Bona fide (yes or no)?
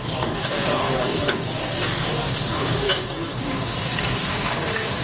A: no